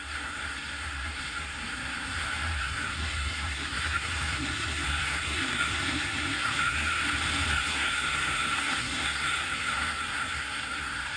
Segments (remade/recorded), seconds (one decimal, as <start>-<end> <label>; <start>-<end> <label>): 0.0-7.0 remade; 7.0-7.5 recorded; 7.5-11.2 remade